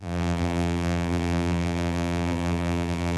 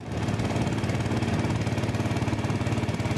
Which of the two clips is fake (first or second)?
first